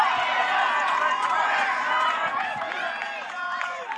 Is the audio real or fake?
fake